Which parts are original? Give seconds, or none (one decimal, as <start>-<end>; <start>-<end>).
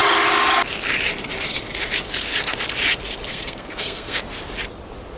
0.0-3.3; 4.2-5.2